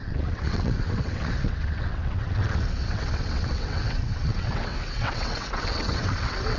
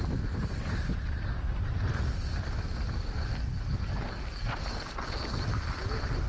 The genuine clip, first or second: second